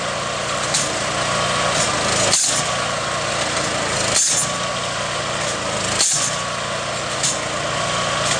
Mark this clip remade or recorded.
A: recorded